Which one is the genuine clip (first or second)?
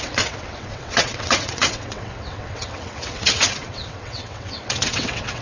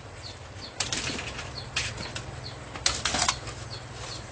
second